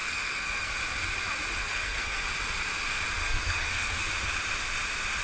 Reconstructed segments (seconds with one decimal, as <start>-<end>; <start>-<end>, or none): 0.0-0.7; 1.6-2.2; 3.2-4.1